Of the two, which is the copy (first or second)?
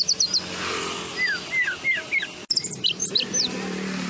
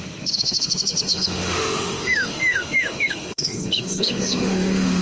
second